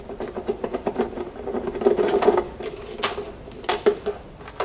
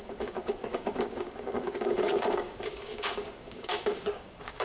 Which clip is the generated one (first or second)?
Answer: second